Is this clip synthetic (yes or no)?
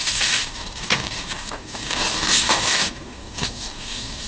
yes